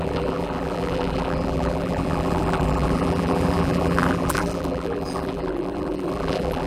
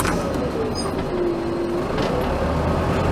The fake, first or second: first